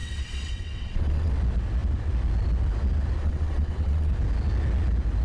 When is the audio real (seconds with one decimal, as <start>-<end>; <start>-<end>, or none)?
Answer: 1.3-3.2; 4.1-5.2